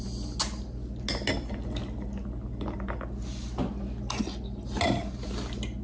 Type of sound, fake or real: real